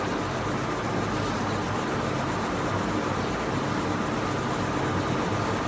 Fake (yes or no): no